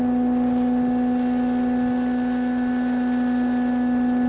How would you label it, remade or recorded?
recorded